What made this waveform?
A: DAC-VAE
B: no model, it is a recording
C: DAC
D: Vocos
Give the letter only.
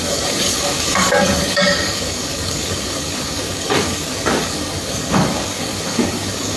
C